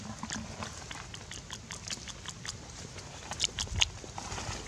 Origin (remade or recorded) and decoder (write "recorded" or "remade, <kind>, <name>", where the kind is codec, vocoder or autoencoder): recorded